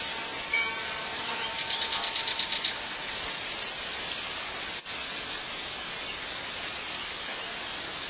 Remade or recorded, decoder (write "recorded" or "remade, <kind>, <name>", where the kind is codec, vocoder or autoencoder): recorded